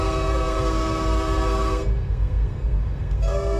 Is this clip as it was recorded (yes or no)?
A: no